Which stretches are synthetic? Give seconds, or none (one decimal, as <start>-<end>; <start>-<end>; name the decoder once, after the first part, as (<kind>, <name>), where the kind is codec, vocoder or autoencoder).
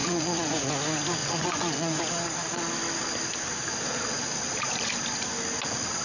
0.0-0.7 (vocoder, Vocos); 1.2-2.0